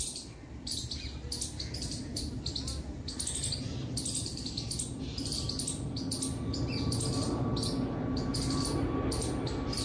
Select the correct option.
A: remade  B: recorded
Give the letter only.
B